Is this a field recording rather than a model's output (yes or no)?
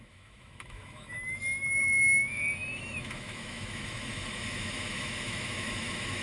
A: no